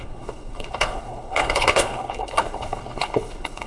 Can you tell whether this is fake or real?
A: fake